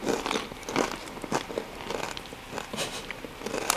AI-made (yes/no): no